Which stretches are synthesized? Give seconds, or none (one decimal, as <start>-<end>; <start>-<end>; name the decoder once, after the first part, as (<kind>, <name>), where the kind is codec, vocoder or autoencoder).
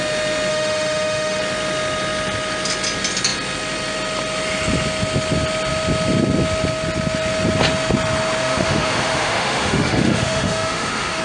0.5-1.4 (autoencoder, DAC-VAE); 8.4-11.2